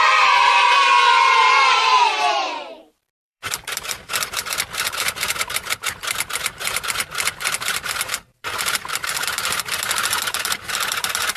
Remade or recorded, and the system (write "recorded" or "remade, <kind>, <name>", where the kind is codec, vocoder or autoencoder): remade, vocoder, BigVGAN v2